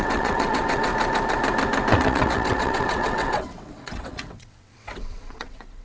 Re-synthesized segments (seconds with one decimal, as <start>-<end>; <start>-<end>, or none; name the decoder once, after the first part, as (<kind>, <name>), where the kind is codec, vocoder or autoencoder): 0.0-0.9 (vocoder, WaveNeXt); 1.9-5.8